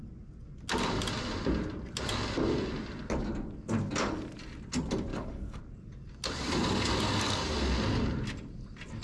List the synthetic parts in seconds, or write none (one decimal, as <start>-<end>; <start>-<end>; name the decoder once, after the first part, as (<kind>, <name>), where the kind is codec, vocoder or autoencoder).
5.1-5.6 (codec, DAC)

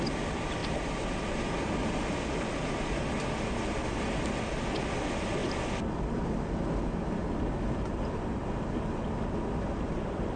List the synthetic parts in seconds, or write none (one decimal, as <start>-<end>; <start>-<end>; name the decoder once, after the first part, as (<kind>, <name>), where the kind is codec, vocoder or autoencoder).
none

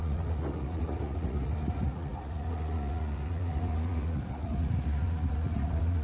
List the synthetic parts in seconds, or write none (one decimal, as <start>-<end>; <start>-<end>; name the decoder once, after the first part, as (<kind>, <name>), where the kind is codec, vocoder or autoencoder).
0.0-6.0 (vocoder, Vocos)

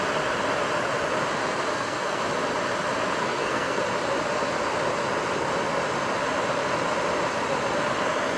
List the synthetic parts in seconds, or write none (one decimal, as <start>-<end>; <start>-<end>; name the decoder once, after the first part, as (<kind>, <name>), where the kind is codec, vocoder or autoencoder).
1.7-2.2 (codec, SNAC); 3.2-3.8

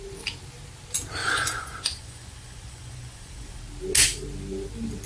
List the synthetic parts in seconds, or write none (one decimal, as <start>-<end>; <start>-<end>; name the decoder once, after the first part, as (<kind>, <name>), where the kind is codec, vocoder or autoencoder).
1.2-3.6 (vocoder, Vocos)

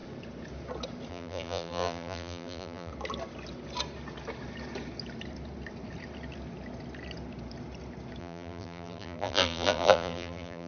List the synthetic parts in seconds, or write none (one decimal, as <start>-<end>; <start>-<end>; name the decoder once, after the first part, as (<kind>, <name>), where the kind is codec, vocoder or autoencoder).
1.1-2.9 (vocoder, BigVGAN v2); 8.2-10.7

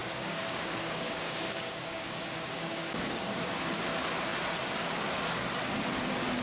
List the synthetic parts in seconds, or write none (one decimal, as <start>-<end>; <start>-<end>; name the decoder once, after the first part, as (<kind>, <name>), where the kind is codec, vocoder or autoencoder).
0.0-3.8 (codec, DAC)

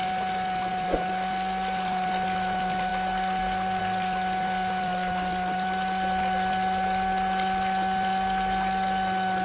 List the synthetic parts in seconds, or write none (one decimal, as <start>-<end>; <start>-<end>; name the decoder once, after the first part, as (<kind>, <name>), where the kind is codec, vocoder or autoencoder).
none